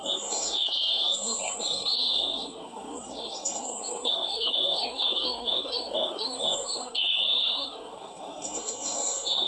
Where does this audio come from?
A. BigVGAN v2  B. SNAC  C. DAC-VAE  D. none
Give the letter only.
B